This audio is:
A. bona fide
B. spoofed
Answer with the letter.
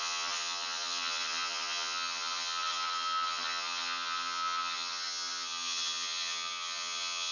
B